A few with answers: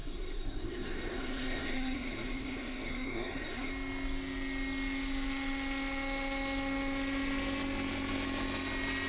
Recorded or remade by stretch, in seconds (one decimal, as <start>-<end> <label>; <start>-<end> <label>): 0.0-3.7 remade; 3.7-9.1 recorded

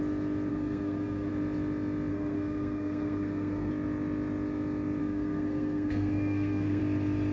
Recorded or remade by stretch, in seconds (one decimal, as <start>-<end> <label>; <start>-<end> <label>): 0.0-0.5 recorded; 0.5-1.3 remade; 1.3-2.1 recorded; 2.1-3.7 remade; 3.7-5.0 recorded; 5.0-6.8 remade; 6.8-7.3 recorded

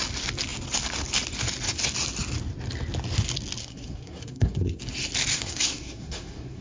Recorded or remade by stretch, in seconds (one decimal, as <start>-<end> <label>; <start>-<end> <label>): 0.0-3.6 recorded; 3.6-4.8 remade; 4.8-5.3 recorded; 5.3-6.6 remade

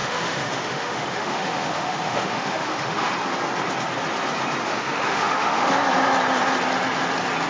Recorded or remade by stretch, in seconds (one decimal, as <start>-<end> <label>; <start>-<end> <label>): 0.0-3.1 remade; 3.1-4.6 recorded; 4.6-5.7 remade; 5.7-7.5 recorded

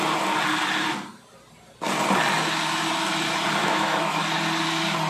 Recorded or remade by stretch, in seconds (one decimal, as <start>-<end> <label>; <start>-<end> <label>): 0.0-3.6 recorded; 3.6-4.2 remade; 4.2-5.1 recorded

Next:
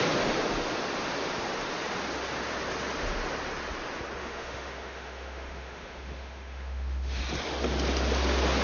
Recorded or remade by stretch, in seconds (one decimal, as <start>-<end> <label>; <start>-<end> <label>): 0.0-4.2 recorded; 4.2-7.2 remade; 7.2-8.6 recorded

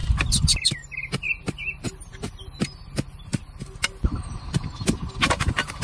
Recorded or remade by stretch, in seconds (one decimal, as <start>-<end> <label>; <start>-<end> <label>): 0.0-5.8 recorded